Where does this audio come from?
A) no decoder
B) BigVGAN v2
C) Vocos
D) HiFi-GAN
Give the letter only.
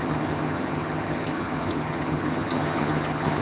D